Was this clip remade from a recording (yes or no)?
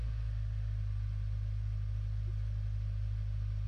no